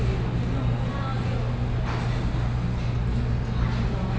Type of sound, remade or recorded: recorded